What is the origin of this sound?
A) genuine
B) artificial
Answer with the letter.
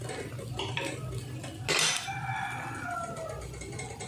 A